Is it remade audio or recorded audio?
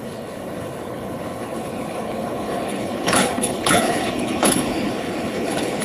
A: remade